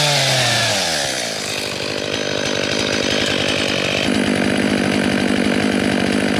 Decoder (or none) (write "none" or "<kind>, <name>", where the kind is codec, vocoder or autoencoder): none